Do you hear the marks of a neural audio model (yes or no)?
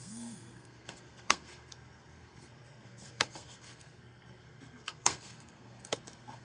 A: yes